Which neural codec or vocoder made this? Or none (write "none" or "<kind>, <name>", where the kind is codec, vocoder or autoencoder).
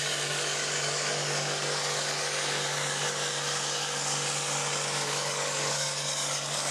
codec, DAC